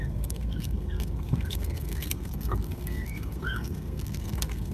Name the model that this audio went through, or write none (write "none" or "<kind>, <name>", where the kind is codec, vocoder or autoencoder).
codec, SNAC